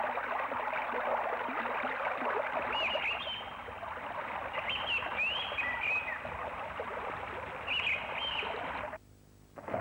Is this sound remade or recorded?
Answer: recorded